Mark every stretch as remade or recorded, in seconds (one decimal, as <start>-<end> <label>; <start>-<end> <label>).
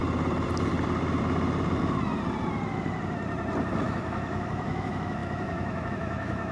0.0-3.6 recorded; 3.6-6.5 remade